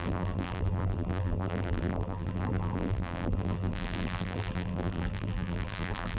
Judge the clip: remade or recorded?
remade